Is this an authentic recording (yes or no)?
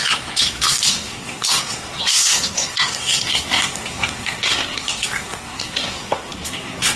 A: no